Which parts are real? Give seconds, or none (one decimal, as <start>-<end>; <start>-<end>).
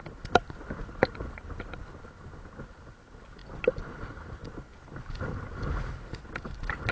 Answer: 0.0-6.9